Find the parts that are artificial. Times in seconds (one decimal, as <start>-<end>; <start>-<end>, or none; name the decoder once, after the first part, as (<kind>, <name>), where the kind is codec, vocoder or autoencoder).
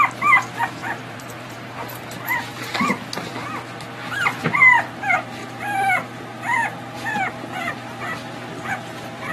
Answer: 0.8-3.3 (vocoder, BigVGAN v2)